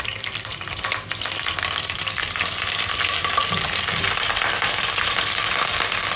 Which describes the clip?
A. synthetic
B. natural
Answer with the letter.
B